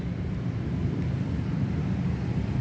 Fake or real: fake